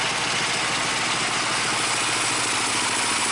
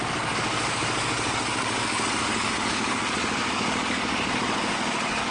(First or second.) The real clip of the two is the first